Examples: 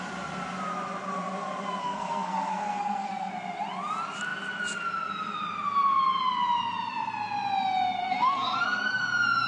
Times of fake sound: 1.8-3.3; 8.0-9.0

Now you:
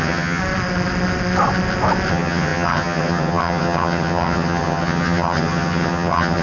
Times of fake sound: 0.0-0.4; 2.1-6.4

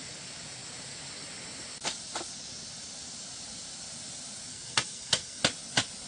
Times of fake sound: 4.5-5.4

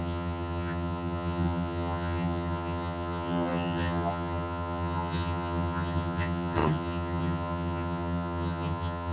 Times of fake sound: 0.0-9.1

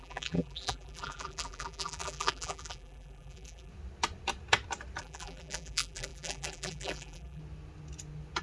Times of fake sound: 0.0-3.7; 5.0-7.4

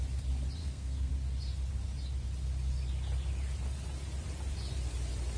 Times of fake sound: 0.6-1.1

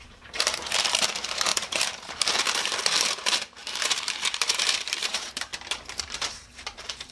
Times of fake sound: 0.0-5.5; 6.0-7.1